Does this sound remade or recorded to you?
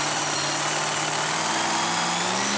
recorded